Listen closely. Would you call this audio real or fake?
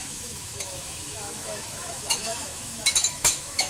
fake